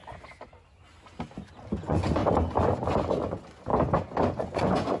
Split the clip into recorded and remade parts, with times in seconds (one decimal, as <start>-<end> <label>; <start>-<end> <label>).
0.0-1.8 recorded; 1.8-2.2 remade; 2.2-3.3 recorded; 3.3-3.7 remade; 3.7-4.4 recorded; 4.4-5.0 remade